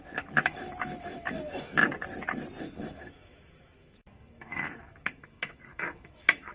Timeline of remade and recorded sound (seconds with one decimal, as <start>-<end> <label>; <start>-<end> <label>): 0.0-1.8 remade; 1.8-2.6 recorded; 2.6-6.5 remade